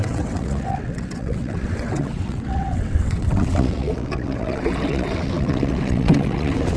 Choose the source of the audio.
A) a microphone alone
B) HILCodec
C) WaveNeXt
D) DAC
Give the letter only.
C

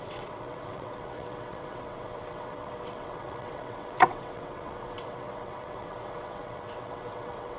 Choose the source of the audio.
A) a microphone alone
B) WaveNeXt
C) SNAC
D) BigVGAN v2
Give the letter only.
B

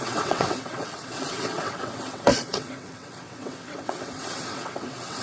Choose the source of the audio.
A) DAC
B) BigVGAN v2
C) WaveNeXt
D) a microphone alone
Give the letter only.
C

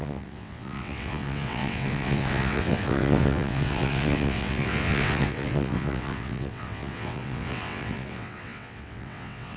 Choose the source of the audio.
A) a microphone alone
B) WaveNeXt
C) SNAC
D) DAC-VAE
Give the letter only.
B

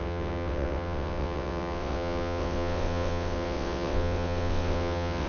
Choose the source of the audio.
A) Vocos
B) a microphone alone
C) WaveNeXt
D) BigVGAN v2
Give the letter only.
C